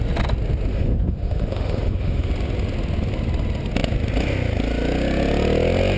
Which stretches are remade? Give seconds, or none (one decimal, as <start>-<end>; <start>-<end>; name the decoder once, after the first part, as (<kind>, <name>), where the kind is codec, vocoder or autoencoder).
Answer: 0.7-2.3 (autoencoder, DAC-VAE)